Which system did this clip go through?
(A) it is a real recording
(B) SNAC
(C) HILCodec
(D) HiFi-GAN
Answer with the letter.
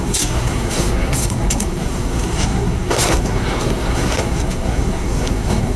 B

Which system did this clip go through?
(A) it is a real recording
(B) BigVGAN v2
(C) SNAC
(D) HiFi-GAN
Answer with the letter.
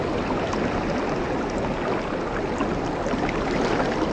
A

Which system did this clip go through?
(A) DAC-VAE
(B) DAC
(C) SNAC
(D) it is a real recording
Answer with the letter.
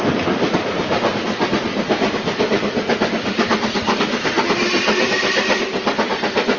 D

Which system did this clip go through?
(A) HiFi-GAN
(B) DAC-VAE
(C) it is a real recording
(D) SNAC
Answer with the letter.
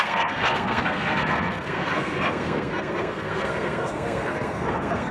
D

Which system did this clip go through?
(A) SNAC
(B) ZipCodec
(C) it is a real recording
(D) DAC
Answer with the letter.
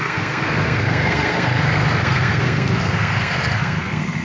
A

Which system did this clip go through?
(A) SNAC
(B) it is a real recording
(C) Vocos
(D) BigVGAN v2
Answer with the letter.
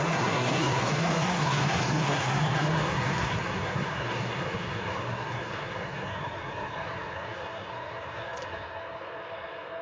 A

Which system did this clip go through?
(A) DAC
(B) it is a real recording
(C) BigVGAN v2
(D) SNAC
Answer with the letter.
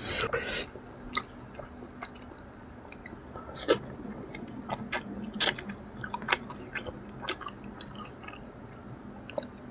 B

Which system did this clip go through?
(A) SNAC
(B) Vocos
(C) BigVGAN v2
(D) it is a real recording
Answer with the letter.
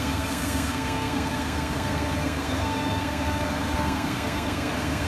A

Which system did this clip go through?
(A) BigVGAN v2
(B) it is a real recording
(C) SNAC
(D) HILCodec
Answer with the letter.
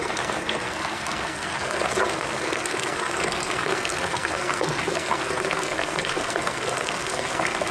C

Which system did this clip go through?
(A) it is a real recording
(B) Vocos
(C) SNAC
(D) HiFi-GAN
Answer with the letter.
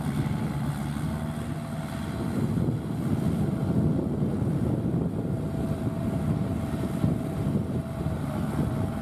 A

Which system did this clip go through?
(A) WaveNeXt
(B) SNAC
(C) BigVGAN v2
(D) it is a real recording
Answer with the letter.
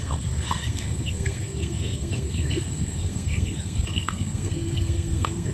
B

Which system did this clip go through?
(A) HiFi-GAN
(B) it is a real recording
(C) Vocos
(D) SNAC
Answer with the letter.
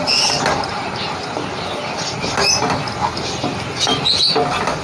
B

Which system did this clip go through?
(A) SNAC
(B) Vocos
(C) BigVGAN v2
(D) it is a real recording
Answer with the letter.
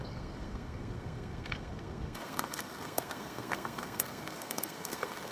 A